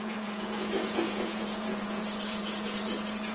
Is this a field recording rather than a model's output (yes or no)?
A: no